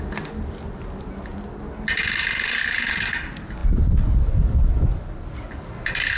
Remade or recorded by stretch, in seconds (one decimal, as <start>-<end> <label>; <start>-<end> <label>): 0.0-6.2 recorded